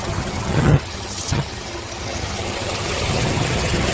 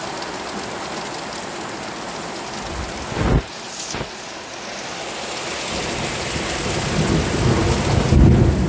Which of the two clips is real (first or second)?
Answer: second